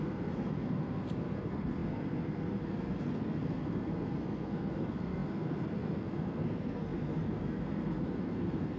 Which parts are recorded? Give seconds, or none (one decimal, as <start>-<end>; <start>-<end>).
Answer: none